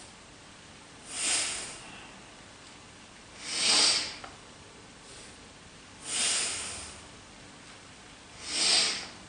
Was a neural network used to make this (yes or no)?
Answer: no